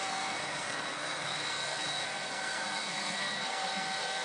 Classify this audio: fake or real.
fake